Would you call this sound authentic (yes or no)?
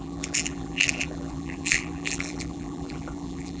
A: no